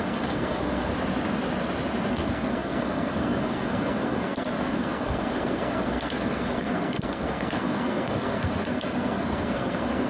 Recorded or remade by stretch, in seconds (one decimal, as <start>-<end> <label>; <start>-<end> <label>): 0.0-0.9 remade; 0.9-2.1 recorded; 2.1-10.1 remade